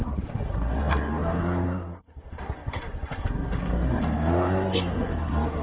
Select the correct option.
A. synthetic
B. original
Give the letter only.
A